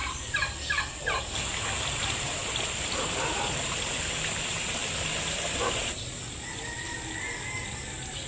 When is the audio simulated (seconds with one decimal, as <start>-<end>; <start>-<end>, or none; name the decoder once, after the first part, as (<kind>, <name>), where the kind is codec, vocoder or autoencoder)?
0.0-1.2 (vocoder, BigVGAN v2); 4.8-5.8